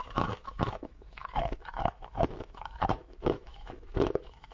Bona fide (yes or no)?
no